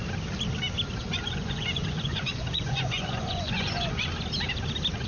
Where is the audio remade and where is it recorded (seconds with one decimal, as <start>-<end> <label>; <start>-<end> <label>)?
0.0-1.0 recorded; 1.0-4.1 remade; 4.1-5.1 recorded